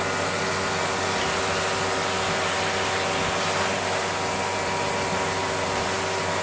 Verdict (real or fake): real